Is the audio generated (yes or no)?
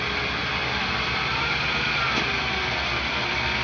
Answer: no